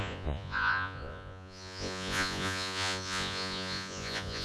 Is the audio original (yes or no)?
no